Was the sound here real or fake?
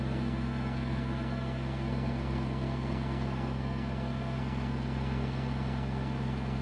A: fake